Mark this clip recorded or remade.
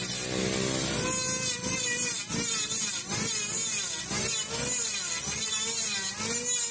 recorded